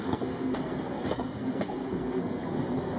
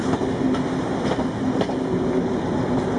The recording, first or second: second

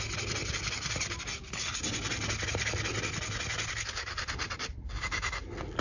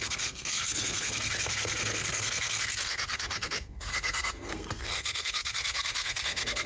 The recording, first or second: first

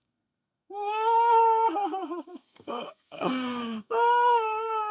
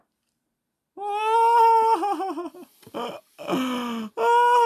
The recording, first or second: second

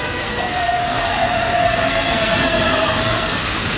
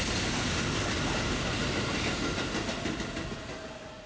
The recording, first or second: second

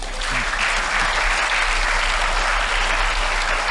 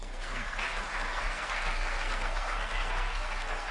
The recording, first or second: first